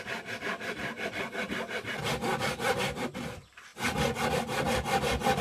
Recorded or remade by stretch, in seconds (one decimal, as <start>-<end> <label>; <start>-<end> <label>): 0.0-5.4 recorded